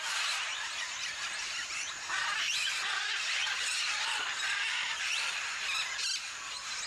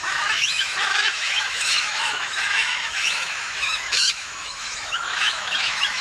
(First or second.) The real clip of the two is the first